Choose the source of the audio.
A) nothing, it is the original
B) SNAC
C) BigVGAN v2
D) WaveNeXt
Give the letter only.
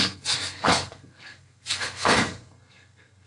B